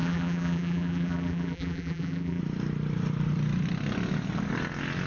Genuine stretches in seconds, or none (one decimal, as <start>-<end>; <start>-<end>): 2.4-5.1